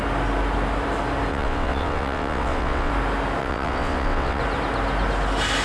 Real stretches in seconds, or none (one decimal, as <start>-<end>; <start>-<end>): 0.0-1.3; 2.9-3.4; 4.4-5.6